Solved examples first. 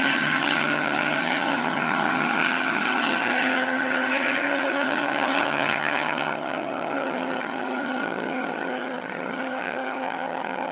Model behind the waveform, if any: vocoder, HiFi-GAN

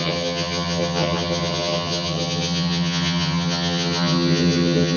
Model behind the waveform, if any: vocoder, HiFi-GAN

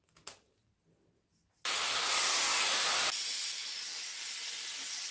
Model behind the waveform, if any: none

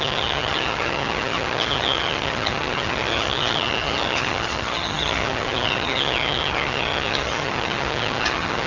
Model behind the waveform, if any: vocoder, HiFi-GAN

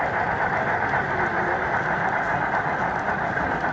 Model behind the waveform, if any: none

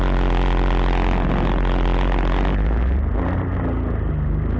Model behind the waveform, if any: none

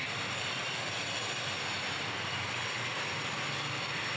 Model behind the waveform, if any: none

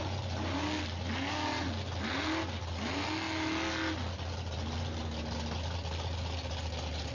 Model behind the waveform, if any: none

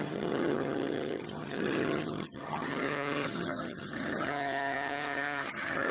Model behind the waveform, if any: vocoder, HiFi-GAN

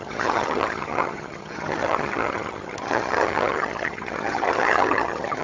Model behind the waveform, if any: vocoder, HiFi-GAN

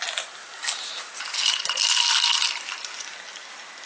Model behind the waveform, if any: none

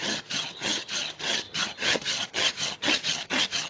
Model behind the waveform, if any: vocoder, HiFi-GAN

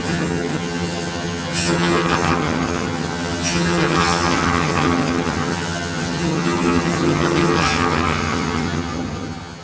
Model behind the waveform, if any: vocoder, HiFi-GAN